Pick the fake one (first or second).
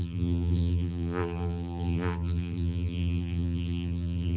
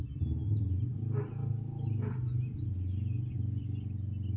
first